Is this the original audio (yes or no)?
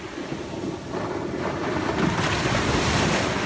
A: yes